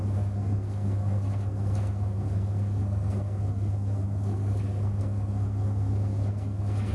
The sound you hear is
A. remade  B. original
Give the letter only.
A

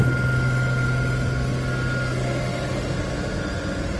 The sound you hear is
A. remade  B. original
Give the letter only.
B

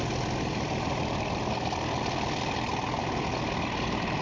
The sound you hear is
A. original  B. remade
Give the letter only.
A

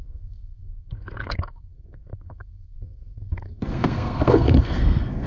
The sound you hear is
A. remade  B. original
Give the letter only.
A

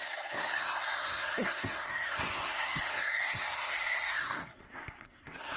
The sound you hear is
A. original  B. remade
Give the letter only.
B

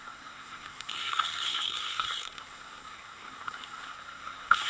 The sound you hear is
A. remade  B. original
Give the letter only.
A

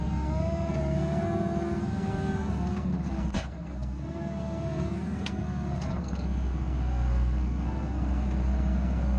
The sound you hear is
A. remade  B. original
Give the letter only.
A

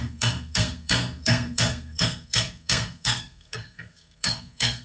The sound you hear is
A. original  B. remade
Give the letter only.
B